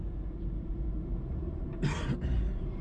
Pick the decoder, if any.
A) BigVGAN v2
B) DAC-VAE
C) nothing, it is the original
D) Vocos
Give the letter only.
A